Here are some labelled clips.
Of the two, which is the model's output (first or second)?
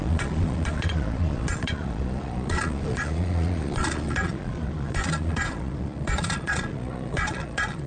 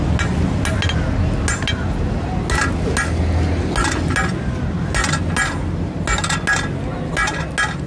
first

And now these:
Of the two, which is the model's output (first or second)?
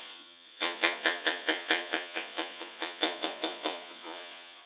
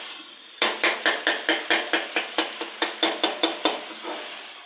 first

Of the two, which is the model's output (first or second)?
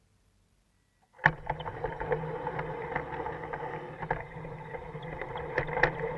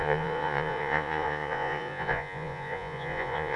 second